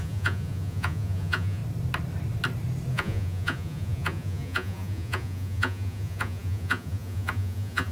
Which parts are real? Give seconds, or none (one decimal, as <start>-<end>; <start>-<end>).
1.6-2.9